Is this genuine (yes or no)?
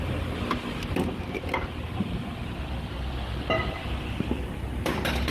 yes